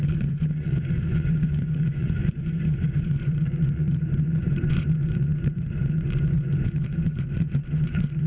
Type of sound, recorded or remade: remade